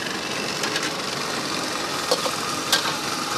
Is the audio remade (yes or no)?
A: no